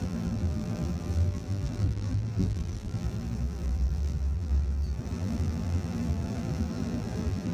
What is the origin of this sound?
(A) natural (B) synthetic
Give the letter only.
B